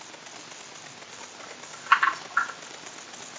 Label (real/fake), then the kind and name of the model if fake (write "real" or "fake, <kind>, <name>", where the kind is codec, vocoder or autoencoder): real